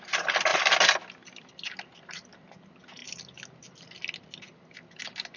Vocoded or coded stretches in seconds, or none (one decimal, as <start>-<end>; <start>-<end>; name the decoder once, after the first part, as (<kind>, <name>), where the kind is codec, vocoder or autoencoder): none